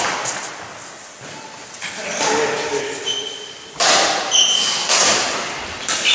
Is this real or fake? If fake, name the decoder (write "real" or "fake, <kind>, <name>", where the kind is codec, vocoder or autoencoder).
real